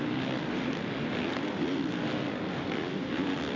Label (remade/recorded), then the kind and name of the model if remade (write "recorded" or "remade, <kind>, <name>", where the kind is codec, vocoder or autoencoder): recorded